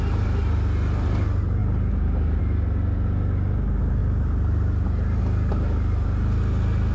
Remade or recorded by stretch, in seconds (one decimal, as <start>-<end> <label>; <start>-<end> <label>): 0.0-6.9 recorded